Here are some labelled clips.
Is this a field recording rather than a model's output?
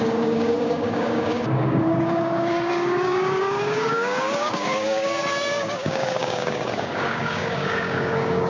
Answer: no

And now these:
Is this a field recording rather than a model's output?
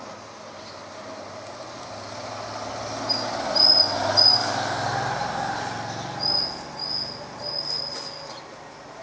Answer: yes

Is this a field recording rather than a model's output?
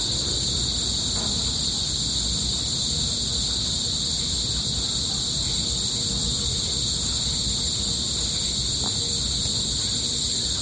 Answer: yes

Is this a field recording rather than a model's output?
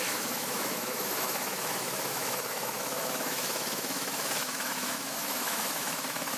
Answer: no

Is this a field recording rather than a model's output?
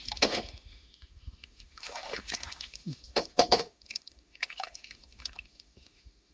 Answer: no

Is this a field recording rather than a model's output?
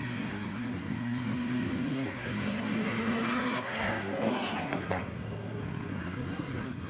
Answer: no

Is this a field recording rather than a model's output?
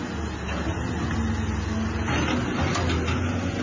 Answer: yes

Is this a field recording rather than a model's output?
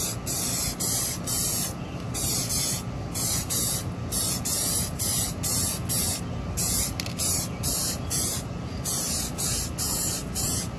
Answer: yes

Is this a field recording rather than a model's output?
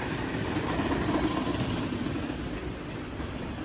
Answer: no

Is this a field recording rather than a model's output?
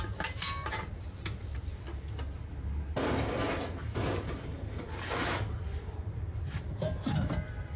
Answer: no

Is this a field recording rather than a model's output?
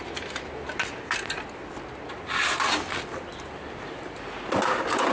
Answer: yes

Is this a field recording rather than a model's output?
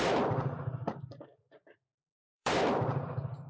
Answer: no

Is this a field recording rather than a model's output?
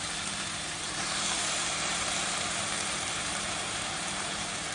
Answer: no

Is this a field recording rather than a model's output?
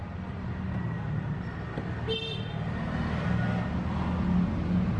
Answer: yes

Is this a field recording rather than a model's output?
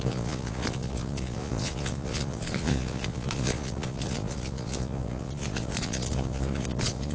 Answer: no